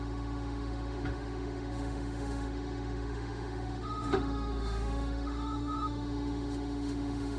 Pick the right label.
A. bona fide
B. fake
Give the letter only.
B